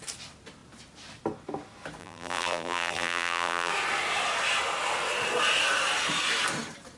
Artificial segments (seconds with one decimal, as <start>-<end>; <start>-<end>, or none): 2.0-3.7